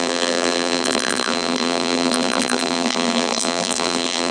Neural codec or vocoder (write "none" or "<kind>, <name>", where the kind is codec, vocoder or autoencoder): vocoder, BigVGAN v2